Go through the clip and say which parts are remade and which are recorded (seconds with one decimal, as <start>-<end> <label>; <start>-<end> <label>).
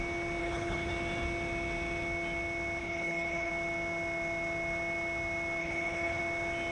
0.0-0.4 recorded; 0.4-0.9 remade; 0.9-2.8 recorded; 2.8-3.5 remade; 3.5-5.6 recorded; 5.6-6.2 remade; 6.2-6.7 recorded